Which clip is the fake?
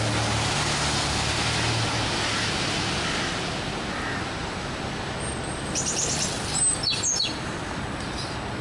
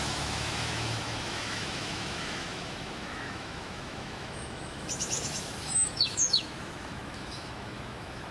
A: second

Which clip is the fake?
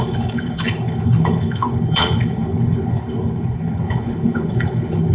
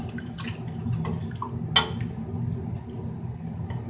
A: first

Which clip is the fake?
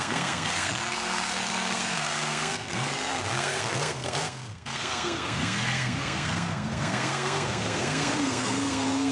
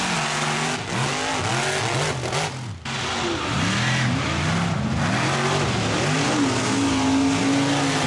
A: first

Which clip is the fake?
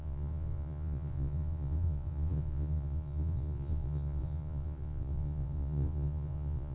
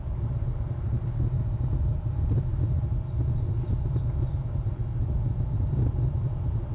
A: first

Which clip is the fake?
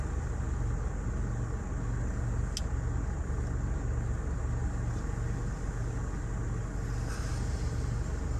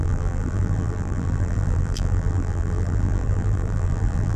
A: second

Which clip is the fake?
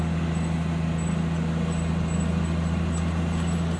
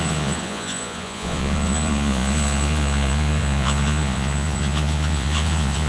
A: second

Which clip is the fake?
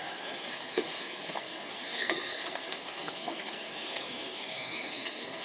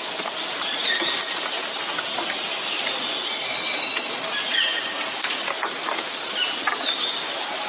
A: first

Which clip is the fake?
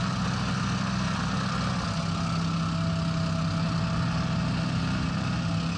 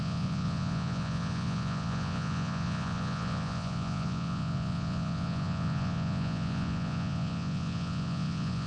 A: second